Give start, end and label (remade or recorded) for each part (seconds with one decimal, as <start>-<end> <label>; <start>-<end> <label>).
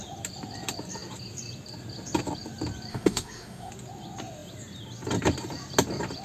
0.0-2.9 recorded; 2.9-3.7 remade; 3.7-6.2 recorded